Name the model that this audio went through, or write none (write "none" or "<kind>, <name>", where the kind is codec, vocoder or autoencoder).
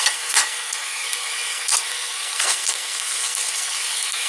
codec, SNAC